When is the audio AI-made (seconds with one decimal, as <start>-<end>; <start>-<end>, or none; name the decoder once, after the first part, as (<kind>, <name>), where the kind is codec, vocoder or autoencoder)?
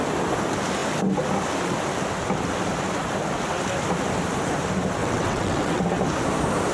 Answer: 5.0-5.8 (vocoder, WaveNeXt)